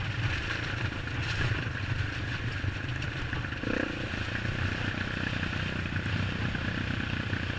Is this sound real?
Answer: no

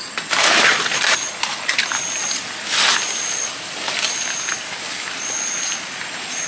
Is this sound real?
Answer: yes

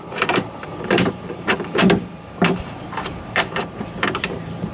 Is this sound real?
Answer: no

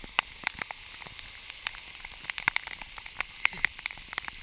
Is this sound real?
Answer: yes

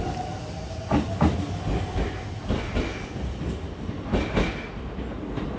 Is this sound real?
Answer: yes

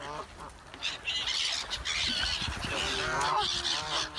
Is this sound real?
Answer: yes